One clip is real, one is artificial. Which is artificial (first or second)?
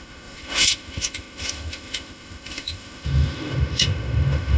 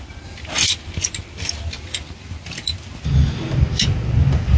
first